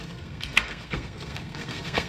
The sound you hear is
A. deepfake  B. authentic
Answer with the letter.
A